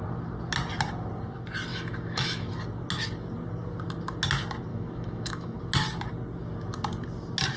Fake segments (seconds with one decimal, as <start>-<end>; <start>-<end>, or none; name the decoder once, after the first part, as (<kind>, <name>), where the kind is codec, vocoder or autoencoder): 1.7-2.6 (autoencoder, DAC-VAE); 4.7-5.6